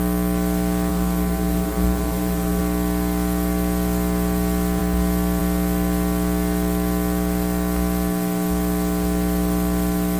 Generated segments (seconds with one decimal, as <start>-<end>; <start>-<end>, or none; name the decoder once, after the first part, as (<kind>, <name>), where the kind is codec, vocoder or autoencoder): 0.9-2.6 (vocoder, BigVGAN v2)